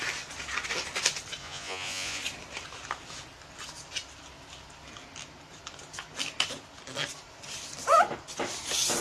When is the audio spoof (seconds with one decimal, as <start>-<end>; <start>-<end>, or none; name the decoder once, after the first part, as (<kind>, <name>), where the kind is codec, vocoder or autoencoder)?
1.4-2.2 (vocoder, Vocos)